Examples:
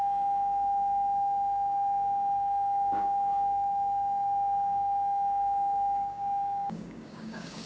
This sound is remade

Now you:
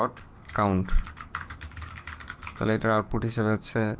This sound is remade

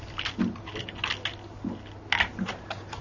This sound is recorded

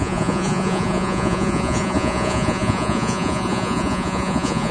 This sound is remade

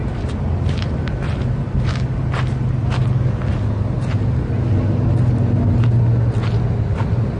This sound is recorded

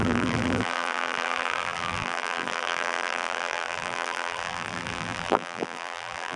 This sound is remade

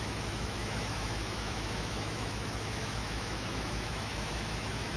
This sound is remade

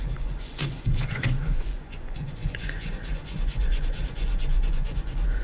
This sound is remade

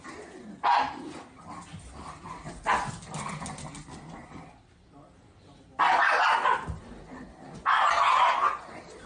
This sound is recorded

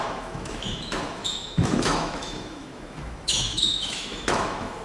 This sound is remade